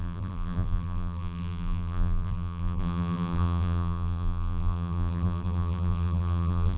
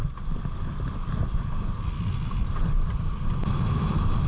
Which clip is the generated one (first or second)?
first